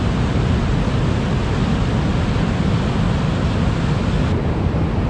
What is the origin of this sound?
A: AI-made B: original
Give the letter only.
B